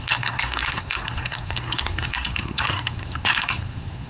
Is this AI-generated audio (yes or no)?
yes